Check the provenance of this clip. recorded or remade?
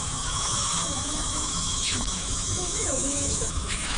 remade